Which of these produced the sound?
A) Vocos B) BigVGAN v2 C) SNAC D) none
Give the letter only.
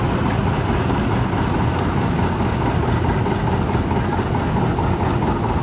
D